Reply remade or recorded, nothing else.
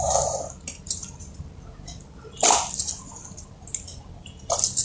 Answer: recorded